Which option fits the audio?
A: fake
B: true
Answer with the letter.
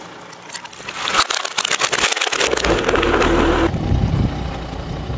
B